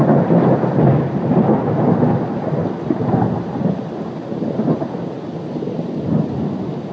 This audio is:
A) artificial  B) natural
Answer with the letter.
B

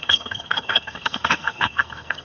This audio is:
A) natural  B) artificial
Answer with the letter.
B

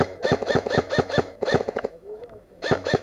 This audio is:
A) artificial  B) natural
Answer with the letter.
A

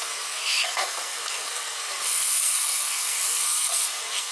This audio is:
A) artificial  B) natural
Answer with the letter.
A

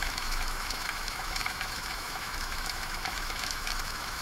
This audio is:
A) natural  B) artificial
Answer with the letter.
B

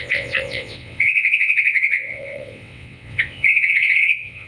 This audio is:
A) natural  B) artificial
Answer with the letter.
B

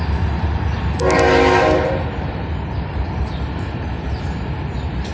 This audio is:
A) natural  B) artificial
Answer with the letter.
A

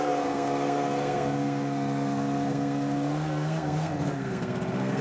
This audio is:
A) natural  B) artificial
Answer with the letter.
B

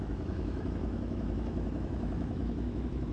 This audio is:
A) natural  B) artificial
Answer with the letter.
B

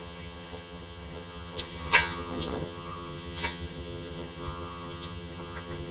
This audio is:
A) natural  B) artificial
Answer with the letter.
B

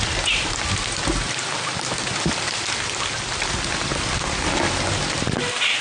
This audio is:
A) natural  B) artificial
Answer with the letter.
A